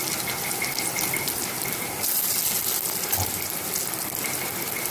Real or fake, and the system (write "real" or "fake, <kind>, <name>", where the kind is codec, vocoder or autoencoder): real